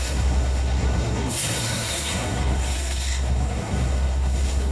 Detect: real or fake fake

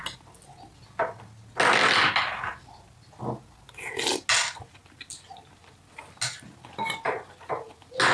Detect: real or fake real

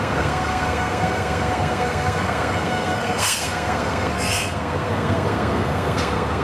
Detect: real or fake fake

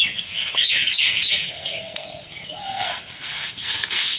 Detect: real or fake fake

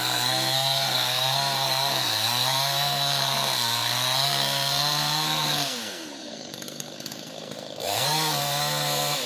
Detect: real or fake fake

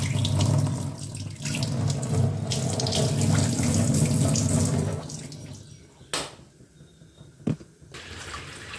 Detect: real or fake real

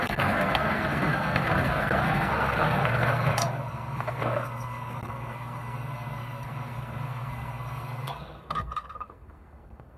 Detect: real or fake fake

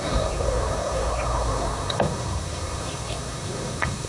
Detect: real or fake fake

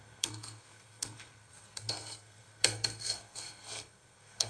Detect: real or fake fake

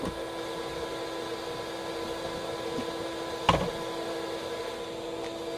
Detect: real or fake real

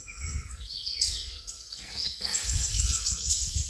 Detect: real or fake fake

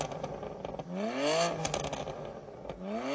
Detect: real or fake real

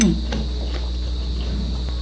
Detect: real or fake real